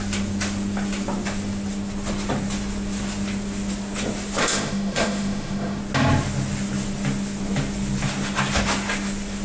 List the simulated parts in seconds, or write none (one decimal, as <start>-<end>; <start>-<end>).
4.4-5.8